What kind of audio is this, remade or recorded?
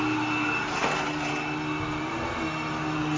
recorded